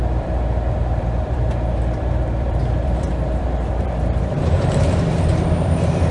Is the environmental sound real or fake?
fake